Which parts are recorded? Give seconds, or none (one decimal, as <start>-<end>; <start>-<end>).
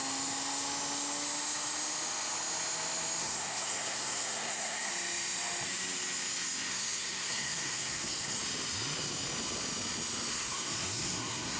0.0-3.2; 4.9-6.7; 8.4-10.3